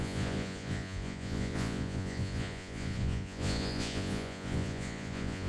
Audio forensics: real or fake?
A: fake